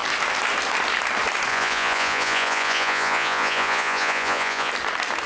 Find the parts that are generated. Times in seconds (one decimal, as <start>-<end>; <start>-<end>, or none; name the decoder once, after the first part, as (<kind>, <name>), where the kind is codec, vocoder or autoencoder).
1.5-4.7 (vocoder, Vocos)